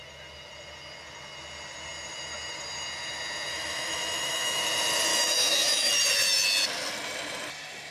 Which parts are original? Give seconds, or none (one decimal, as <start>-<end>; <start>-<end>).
0.0-3.5; 4.6-5.1; 5.9-7.9